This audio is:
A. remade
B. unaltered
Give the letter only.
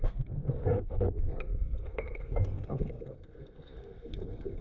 A